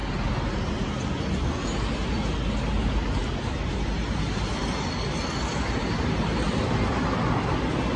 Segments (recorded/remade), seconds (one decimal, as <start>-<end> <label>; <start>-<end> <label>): 0.0-8.0 recorded